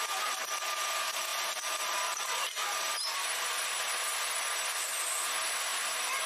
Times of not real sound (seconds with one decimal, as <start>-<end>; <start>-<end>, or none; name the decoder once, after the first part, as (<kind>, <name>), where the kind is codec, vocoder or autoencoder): none